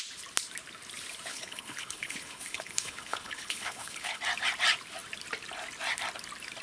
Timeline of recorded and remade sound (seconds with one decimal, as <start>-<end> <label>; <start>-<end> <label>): 0.0-1.3 recorded; 1.3-4.2 remade; 4.2-6.6 recorded